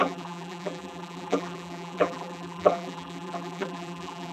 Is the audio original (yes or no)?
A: no